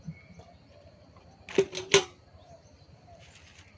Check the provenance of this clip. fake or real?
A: real